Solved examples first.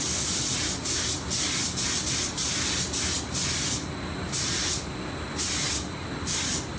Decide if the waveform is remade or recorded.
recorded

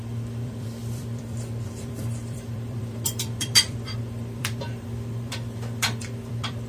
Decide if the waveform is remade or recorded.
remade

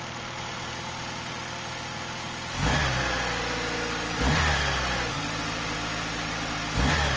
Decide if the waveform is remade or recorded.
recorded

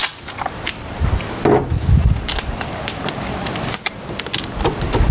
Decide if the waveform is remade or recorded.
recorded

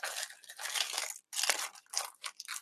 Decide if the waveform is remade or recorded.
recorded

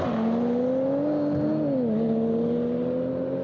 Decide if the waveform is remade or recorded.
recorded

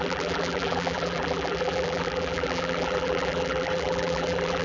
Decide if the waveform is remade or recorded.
remade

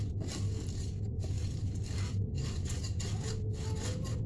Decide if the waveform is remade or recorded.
recorded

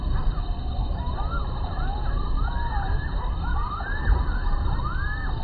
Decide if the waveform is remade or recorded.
recorded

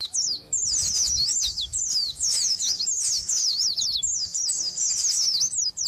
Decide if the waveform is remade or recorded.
remade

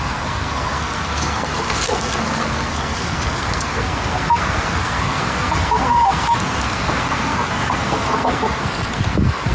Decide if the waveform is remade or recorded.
remade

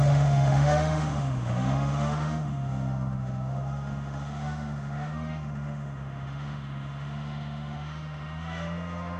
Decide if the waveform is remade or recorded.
remade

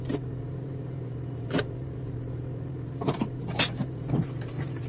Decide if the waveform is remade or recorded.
remade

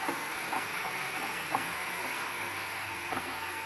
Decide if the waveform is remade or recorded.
remade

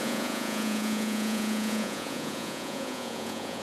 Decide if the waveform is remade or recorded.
remade